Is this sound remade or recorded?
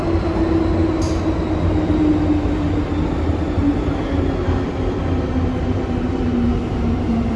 recorded